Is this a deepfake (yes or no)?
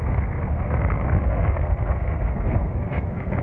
yes